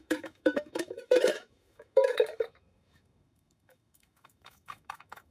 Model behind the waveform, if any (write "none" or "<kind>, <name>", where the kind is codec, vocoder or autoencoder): autoencoder, DAC-VAE